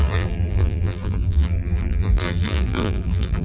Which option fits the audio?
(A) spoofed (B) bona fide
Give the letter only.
A